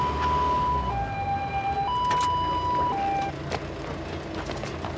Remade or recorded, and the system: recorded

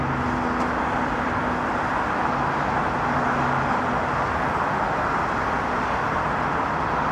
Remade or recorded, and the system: recorded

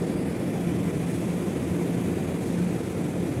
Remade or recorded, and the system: recorded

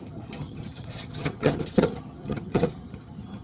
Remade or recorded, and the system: remade, vocoder, HiFi-GAN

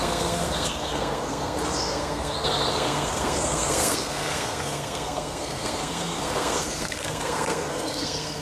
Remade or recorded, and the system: remade, codec, SNAC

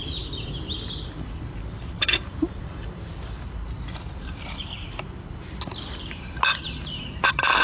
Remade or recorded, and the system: remade, vocoder, BigVGAN v2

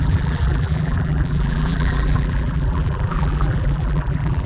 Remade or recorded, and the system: remade, vocoder, BigVGAN v2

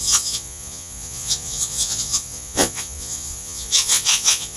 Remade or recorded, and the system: remade, vocoder, Vocos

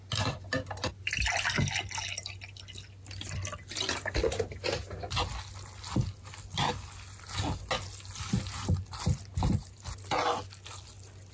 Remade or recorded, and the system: recorded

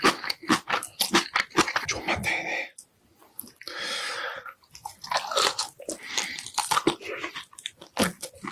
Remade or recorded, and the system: recorded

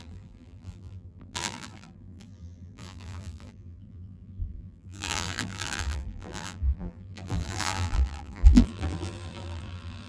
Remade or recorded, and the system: remade, vocoder, BigVGAN v2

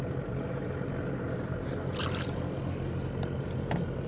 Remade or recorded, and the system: recorded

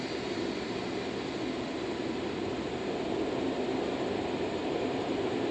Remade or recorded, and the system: recorded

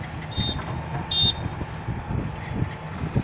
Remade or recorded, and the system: recorded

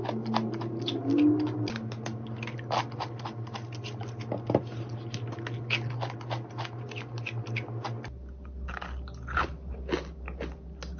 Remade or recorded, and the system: recorded